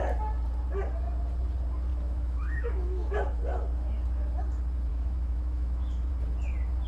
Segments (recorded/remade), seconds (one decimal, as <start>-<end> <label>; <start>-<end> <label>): 0.0-1.9 recorded; 1.9-3.4 remade; 3.4-4.9 recorded; 4.9-6.1 remade; 6.1-6.9 recorded